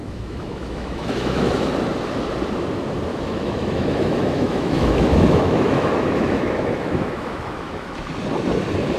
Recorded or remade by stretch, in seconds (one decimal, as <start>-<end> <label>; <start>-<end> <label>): 0.0-1.7 remade; 1.7-3.1 recorded; 3.1-8.1 remade; 8.1-9.0 recorded